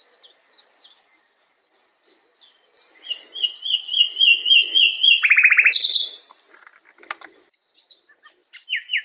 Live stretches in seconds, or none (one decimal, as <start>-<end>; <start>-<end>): 0.0-9.0